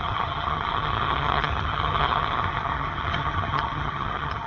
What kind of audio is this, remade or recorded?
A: remade